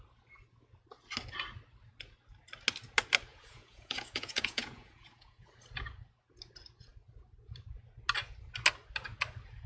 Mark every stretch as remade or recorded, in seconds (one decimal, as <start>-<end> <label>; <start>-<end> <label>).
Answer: 0.0-3.3 recorded; 3.3-5.5 remade; 5.5-9.7 recorded